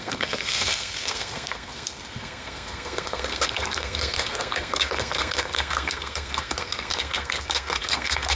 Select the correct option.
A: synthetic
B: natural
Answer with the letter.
A